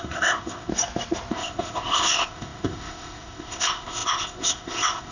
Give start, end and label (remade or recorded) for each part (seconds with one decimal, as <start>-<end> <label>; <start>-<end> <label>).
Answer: 0.0-0.7 remade; 0.7-1.3 recorded; 1.3-5.1 remade